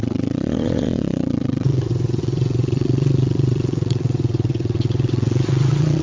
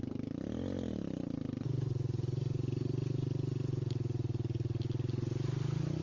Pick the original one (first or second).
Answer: second